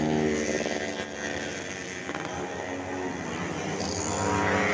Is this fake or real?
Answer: real